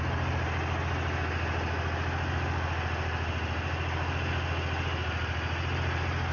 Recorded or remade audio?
recorded